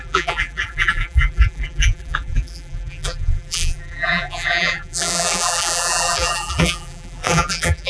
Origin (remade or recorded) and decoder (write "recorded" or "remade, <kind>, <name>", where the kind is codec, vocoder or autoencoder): remade, vocoder, BigVGAN v2